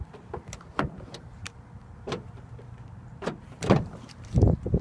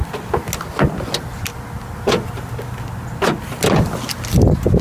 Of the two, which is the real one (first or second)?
second